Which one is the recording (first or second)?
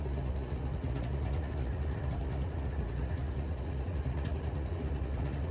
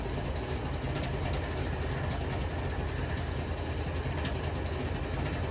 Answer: second